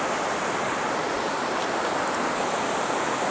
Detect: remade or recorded remade